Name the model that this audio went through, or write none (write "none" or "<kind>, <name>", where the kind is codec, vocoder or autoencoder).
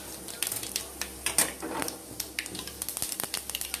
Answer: none